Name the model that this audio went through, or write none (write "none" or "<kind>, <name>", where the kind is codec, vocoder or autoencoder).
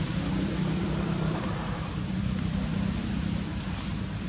vocoder, BigVGAN v2